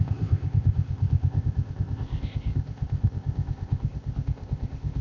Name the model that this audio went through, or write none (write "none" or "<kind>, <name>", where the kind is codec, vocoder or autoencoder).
codec, ZipCodec